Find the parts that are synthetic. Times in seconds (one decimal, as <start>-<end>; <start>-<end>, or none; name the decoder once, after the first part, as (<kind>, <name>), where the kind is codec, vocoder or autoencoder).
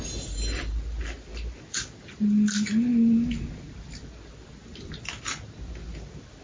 none